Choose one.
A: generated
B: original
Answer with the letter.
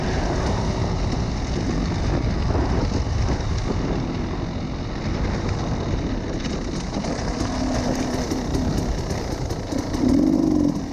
B